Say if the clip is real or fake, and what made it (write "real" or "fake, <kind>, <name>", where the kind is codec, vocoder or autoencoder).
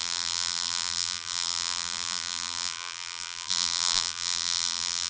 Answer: fake, vocoder, BigVGAN v2